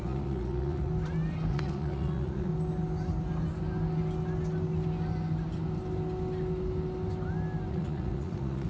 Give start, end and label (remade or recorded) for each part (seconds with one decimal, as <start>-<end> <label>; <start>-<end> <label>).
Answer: 0.0-0.9 remade; 0.9-1.5 recorded; 1.5-2.5 remade; 2.5-7.7 recorded; 7.7-8.7 remade